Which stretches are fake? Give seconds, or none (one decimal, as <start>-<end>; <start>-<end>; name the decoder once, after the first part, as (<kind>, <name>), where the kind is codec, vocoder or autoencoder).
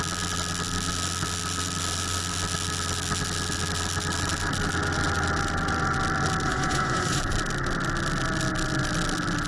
6.5-7.2 (vocoder, Vocos)